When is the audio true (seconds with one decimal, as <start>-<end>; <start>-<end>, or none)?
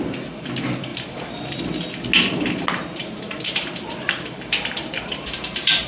0.0-0.9; 1.6-3.0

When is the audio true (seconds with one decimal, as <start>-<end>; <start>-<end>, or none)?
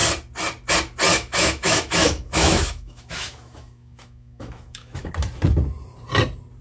0.0-1.1; 5.1-6.6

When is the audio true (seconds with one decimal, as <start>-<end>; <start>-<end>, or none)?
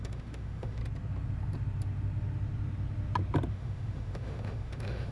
0.8-3.5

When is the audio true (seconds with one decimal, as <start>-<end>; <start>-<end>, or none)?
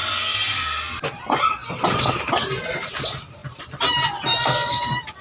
0.0-5.2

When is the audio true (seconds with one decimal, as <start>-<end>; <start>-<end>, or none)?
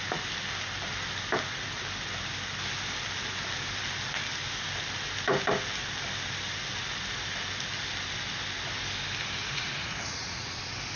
0.0-9.4; 10.6-11.0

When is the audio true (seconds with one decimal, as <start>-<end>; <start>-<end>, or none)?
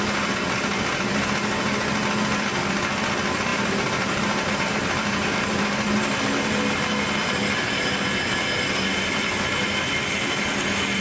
0.0-3.5; 6.4-11.0